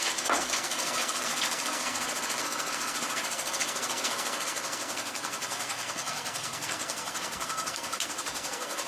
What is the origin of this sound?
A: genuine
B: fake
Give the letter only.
B